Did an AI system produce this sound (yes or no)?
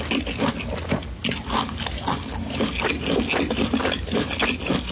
no